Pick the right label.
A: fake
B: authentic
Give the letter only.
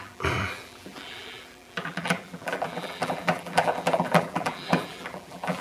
A